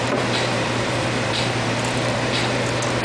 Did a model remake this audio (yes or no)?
yes